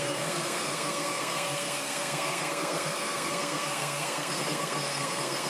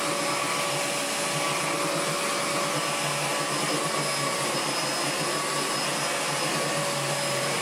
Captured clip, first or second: second